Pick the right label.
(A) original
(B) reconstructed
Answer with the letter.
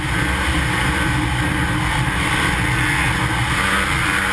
A